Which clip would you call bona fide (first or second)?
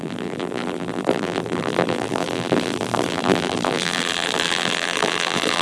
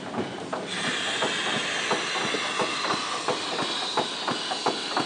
second